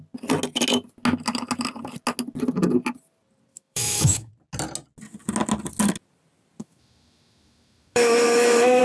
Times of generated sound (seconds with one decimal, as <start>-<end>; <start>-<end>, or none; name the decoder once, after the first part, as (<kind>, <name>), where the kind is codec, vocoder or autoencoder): 3.5-4.3 (autoencoder, DAC-VAE); 6.6-8.8